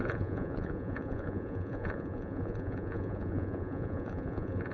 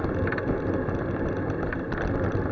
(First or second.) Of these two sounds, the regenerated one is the first